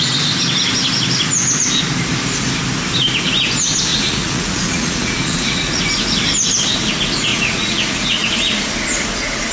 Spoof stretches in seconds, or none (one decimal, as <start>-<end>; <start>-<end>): 3.9-5.8; 7.3-8.3